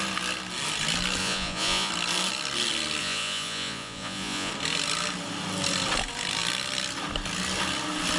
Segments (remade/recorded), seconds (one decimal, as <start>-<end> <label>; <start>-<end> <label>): 0.0-1.2 recorded; 1.2-1.9 remade; 1.9-3.0 recorded; 3.0-4.5 remade; 4.5-8.2 recorded